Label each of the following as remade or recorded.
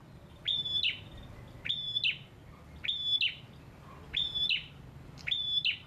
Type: recorded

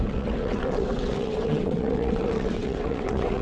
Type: remade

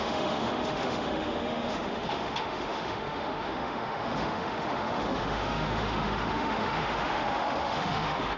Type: remade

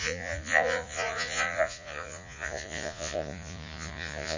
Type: remade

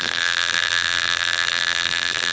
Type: remade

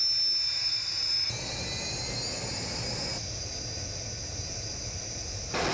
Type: recorded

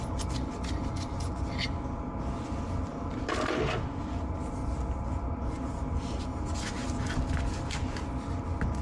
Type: recorded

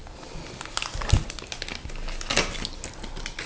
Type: recorded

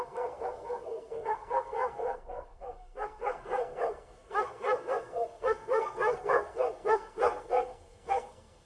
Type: remade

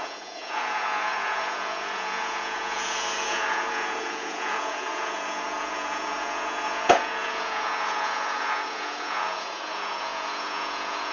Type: remade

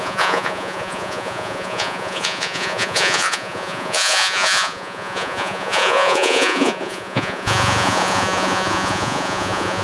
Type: remade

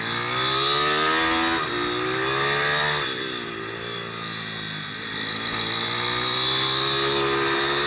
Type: recorded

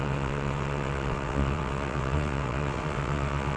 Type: remade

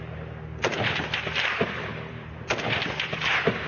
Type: remade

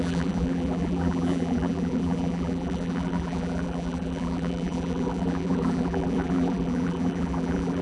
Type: remade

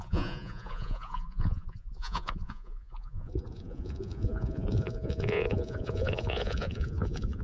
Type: remade